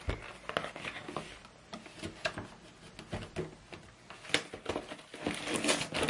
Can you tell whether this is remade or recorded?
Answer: recorded